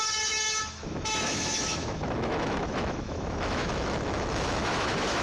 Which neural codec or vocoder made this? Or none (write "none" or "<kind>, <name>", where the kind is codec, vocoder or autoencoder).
autoencoder, DAC-VAE